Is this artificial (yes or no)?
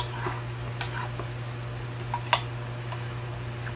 no